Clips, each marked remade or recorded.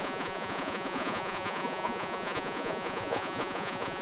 remade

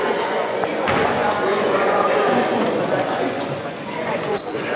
remade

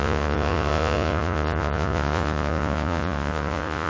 remade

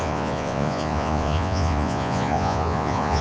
remade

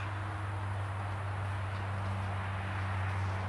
recorded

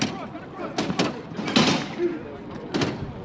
recorded